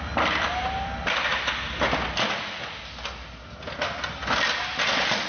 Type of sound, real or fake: real